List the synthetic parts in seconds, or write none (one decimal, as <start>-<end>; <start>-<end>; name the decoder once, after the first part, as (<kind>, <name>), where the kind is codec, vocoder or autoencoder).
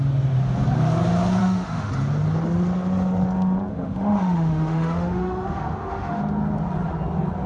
1.4-1.9 (autoencoder, DAC-VAE); 3.7-6.2